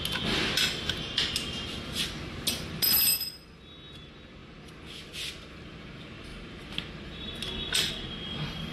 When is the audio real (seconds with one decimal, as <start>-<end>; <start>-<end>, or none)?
0.0-8.7